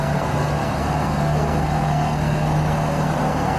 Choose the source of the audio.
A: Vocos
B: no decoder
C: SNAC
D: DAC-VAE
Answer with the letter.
C